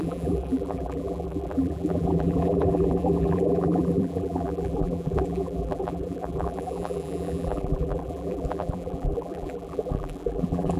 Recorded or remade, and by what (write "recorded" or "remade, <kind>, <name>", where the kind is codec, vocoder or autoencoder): remade, vocoder, BigVGAN v2